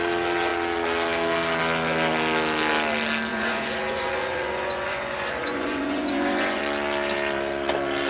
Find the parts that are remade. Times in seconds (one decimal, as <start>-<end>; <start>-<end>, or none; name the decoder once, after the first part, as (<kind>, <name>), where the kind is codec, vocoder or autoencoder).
3.3-6.6 (vocoder, Vocos)